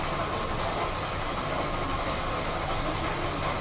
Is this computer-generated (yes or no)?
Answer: no